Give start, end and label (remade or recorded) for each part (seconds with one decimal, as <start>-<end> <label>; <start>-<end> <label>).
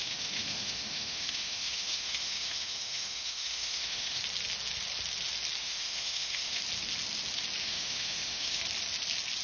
0.0-4.2 remade; 4.2-5.6 recorded; 5.6-6.6 remade; 6.6-7.6 recorded; 7.6-8.6 remade; 8.6-9.4 recorded